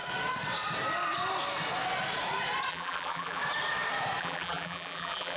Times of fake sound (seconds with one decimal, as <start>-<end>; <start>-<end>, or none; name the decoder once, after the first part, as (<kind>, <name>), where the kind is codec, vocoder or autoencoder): 2.7-3.4 (vocoder, BigVGAN v2); 4.2-5.4